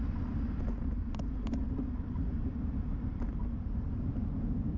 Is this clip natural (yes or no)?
yes